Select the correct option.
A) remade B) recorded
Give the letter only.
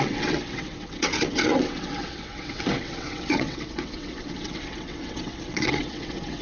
A